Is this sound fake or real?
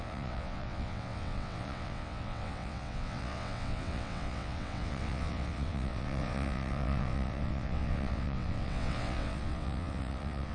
fake